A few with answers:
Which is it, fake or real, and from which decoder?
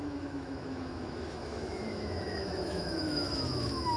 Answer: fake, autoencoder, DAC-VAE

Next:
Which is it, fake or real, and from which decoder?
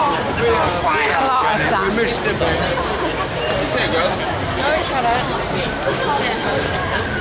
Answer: real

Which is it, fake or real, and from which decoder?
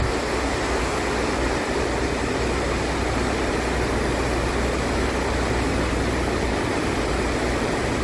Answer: real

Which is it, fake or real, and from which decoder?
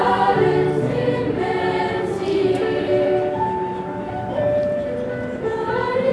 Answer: fake, vocoder, BigVGAN v2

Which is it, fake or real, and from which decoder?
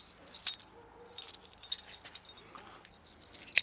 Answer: real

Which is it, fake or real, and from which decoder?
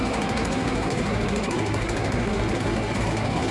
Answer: fake, codec, SNAC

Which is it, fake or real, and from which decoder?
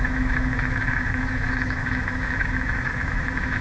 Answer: fake, autoencoder, DAC-VAE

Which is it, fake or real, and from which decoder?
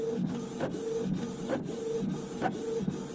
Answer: real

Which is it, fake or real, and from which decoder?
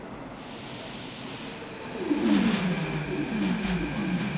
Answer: real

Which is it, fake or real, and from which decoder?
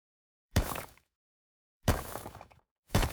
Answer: fake, autoencoder, DAC-VAE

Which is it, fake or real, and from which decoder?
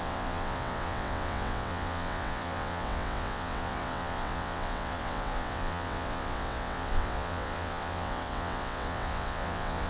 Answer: fake, vocoder, WaveNeXt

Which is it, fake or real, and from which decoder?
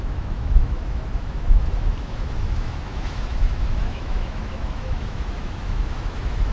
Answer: fake, autoencoder, DAC-VAE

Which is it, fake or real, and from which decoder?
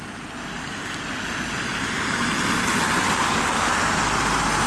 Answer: real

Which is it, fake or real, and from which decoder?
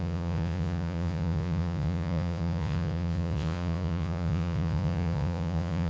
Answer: fake, vocoder, Vocos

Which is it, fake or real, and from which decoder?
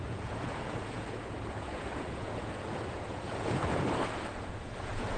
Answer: fake, vocoder, Vocos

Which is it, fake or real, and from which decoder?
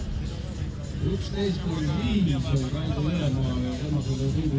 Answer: real